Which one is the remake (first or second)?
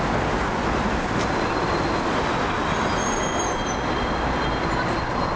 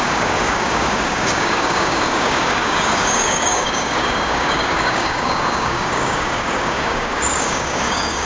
second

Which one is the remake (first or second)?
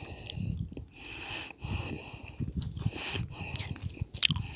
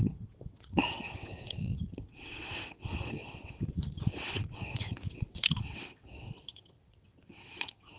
second